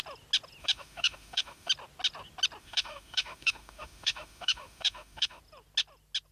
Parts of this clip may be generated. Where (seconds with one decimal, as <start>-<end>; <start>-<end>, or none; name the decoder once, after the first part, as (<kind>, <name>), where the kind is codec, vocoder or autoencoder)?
0.6-1.7 (autoencoder, DAC-VAE); 2.6-5.4

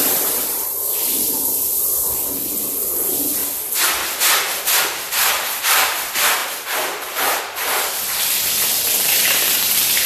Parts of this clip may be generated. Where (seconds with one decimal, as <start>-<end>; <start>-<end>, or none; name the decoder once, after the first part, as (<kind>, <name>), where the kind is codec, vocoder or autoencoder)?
0.0-3.4 (vocoder, BigVGAN v2); 5.1-10.1